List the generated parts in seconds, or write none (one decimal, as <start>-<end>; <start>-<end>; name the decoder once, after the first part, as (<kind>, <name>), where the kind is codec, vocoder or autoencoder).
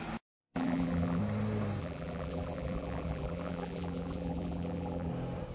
0.4-1.2 (vocoder, BigVGAN v2); 1.8-5.1